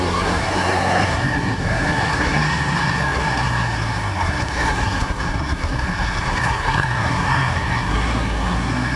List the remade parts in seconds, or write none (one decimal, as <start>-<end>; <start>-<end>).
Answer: 0.0-9.0